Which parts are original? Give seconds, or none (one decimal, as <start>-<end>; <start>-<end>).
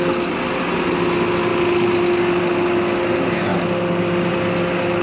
0.0-5.0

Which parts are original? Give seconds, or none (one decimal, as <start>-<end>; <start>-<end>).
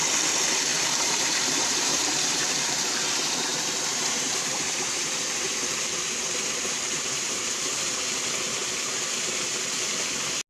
0.0-0.7; 2.9-3.5; 8.2-10.5